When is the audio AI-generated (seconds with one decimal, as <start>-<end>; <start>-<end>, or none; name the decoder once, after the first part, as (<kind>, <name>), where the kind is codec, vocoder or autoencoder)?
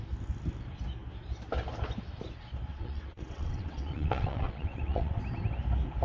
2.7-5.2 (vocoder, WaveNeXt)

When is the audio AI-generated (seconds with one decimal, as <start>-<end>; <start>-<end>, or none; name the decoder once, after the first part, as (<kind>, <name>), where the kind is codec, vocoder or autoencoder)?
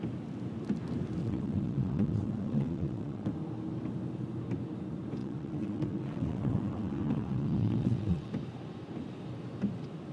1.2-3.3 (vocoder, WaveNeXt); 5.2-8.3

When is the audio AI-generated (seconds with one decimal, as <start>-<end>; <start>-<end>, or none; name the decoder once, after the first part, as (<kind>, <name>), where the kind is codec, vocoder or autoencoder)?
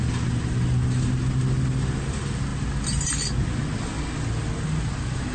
none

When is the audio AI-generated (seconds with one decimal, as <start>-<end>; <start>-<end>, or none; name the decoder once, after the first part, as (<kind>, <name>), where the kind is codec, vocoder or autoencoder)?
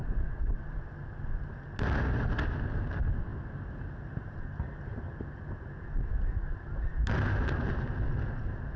0.0-0.6 (vocoder, WaveNeXt)